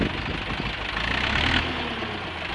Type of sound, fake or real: real